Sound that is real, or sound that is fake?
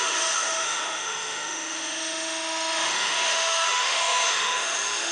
fake